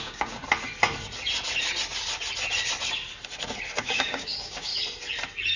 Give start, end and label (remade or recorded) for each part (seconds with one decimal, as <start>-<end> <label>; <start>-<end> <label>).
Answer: 0.0-0.4 remade; 0.4-3.8 recorded; 3.8-4.7 remade; 4.7-5.6 recorded